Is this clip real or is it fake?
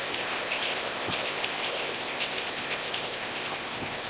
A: fake